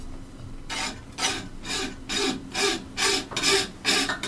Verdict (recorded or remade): recorded